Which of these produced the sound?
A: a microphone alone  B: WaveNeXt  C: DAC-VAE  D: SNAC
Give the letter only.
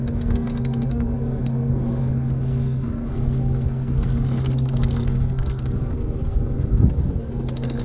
D